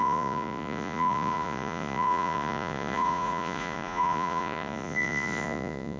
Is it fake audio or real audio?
fake